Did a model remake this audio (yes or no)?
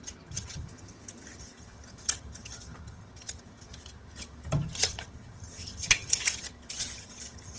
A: yes